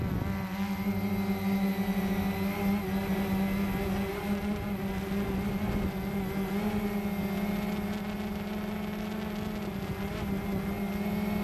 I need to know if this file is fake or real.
real